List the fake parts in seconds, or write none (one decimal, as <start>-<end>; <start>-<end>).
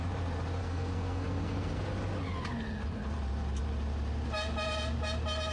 0.6-1.8